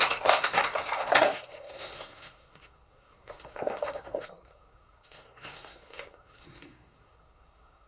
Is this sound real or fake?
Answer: fake